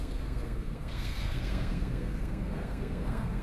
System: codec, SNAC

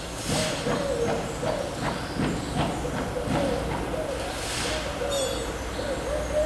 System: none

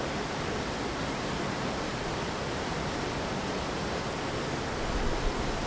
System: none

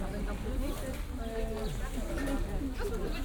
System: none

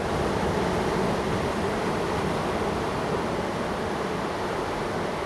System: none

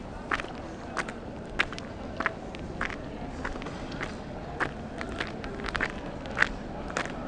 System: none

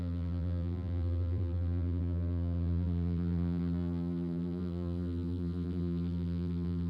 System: vocoder, BigVGAN v2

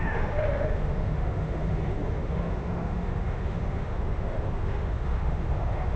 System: autoencoder, DAC-VAE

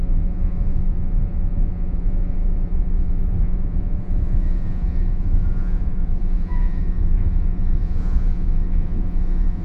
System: vocoder, Vocos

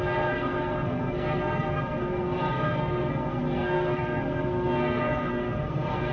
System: codec, SNAC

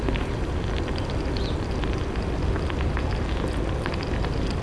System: none